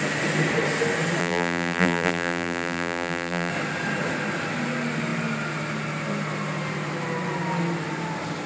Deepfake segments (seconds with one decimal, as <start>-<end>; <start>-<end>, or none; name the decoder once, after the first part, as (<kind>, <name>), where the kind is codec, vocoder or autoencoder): 1.2-3.5 (vocoder, BigVGAN v2)